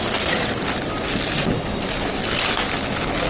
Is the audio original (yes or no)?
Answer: yes